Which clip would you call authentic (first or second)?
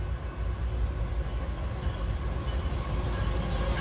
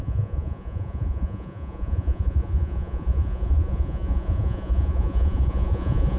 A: first